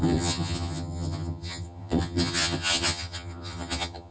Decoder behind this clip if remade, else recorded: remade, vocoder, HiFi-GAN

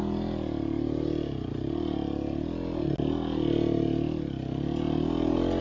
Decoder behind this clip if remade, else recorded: recorded